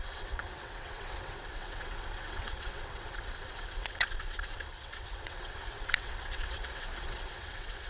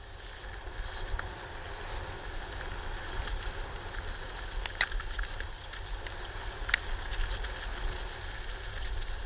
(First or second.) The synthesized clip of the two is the first